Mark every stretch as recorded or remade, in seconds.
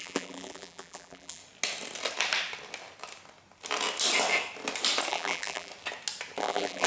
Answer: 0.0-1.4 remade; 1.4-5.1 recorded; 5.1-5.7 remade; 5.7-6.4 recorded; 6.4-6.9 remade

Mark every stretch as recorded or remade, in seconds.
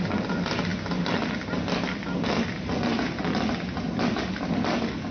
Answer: 0.0-0.7 remade; 0.7-3.3 recorded; 3.3-5.1 remade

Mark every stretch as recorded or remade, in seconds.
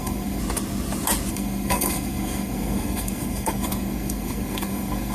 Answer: 0.0-0.4 remade; 0.4-1.3 recorded; 1.3-5.1 remade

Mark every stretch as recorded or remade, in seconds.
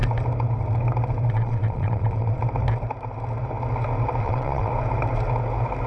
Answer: 0.0-1.3 recorded; 1.3-2.4 remade; 2.4-4.2 recorded; 4.2-4.7 remade; 4.7-5.9 recorded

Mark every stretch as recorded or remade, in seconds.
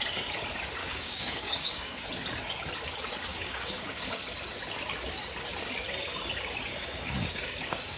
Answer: 0.0-0.8 recorded; 0.8-2.1 remade; 2.1-3.3 recorded; 3.3-4.2 remade; 4.2-6.7 recorded; 6.7-8.0 remade